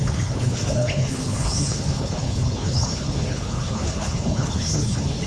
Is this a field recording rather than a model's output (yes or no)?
no